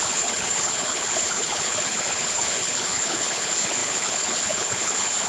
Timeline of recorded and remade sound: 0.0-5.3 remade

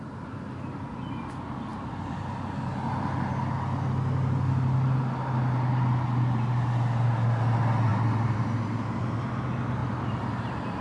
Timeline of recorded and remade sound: 0.0-10.8 recorded

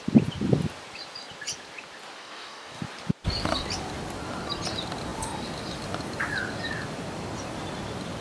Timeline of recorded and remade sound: 0.0-2.2 recorded; 2.2-2.8 remade; 2.8-8.2 recorded

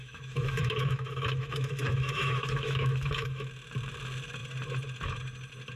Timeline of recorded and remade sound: 0.0-3.5 remade; 3.5-5.8 recorded

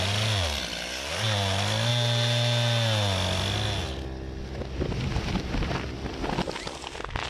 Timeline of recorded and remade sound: 0.0-7.3 recorded

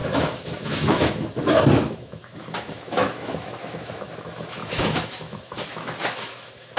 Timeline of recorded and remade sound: 0.0-6.8 remade